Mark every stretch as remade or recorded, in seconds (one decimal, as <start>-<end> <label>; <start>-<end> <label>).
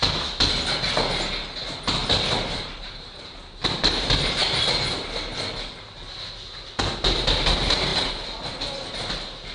0.0-2.0 recorded; 2.0-3.2 remade; 3.2-7.9 recorded; 7.9-8.9 remade; 8.9-9.5 recorded